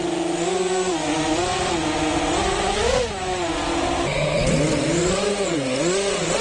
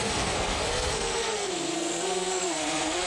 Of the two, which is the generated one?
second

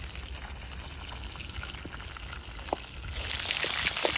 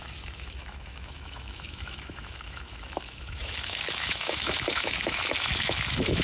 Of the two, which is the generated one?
second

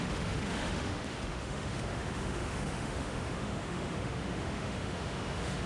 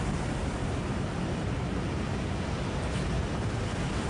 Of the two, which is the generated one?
first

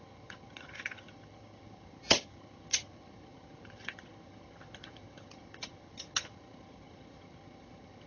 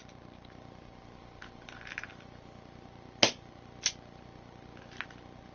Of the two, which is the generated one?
first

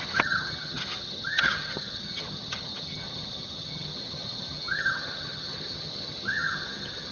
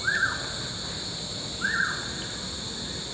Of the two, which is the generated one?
first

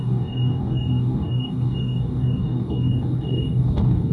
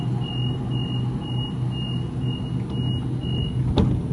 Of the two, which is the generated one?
first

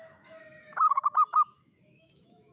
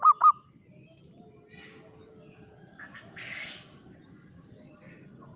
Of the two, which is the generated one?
first